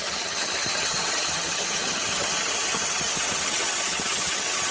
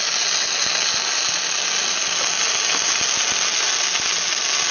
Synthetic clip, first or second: first